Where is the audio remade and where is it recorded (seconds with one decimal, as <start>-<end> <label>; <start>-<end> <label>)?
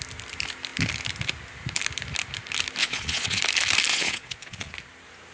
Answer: 0.0-2.8 recorded; 2.8-3.4 remade; 3.4-3.9 recorded; 3.9-4.7 remade; 4.7-5.3 recorded